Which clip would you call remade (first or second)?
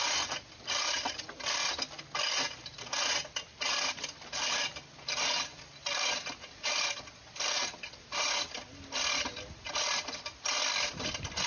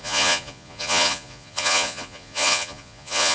second